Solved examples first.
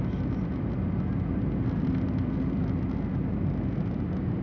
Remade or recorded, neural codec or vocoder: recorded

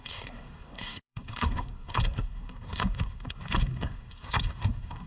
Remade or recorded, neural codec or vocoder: remade, codec, SNAC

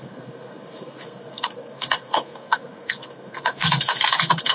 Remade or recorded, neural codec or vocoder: remade, codec, SNAC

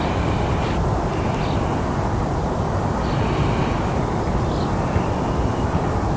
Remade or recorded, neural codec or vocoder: recorded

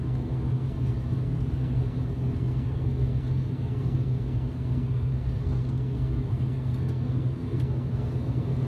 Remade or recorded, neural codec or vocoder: remade, codec, SNAC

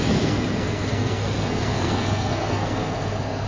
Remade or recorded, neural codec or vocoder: remade, codec, SNAC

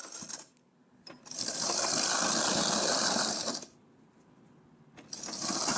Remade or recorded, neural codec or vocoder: recorded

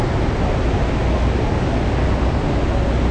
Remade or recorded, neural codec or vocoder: recorded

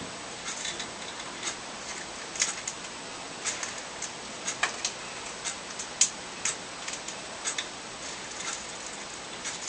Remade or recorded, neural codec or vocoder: recorded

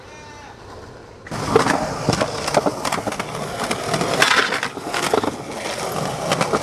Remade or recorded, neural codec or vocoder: recorded